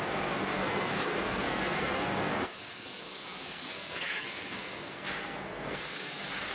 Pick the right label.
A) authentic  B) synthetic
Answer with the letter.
B